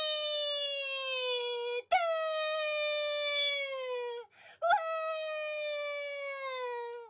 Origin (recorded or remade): recorded